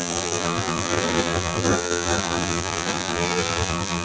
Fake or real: fake